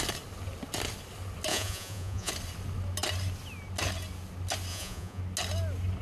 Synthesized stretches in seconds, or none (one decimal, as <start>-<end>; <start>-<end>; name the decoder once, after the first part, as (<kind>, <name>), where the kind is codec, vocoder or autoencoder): 1.5-2.3 (vocoder, Vocos); 4.7-5.2